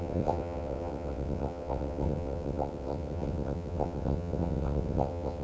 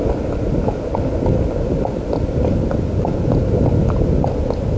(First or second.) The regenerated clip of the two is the first